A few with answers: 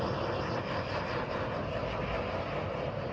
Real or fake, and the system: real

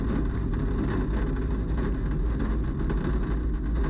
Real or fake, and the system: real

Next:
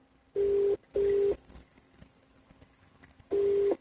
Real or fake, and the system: real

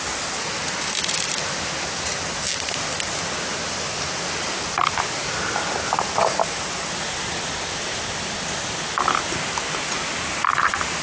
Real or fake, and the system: real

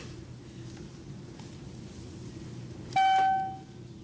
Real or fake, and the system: real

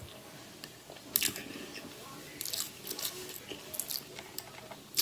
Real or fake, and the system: real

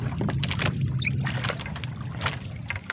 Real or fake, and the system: real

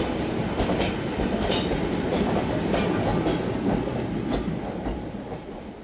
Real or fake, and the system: real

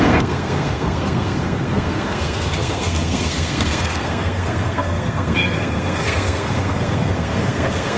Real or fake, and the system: fake, codec, SNAC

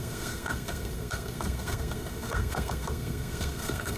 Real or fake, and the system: fake, codec, SNAC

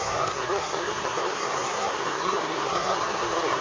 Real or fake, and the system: fake, codec, SNAC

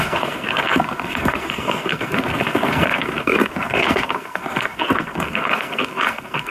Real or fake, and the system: fake, codec, SNAC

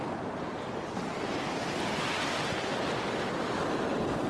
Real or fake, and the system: real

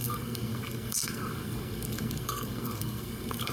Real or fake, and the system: fake, codec, SNAC